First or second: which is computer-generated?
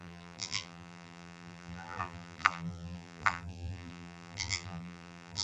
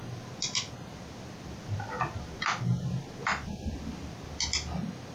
first